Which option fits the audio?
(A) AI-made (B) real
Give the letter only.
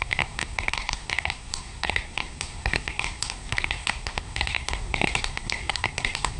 A